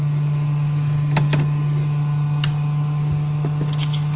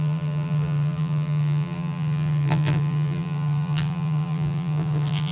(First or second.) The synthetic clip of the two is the second